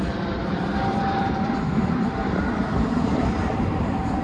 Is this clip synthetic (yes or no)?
yes